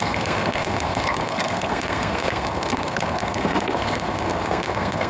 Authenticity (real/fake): fake